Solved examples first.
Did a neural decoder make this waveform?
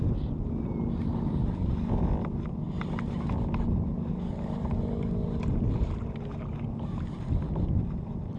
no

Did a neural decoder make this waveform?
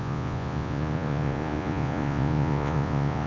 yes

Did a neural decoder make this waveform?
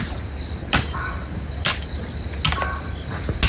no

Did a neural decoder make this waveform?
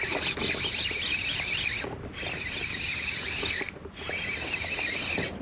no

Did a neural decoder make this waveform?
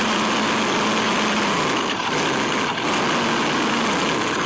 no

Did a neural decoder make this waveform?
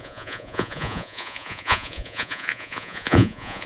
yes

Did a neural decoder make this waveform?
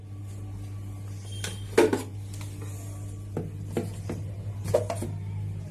no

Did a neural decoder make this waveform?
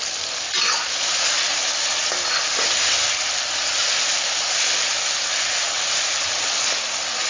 no